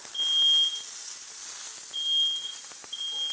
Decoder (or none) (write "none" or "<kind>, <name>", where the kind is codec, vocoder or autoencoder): none